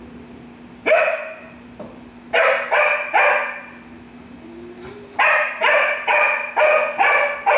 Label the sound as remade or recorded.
recorded